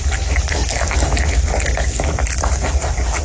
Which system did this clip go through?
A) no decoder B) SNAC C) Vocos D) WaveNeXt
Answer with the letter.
A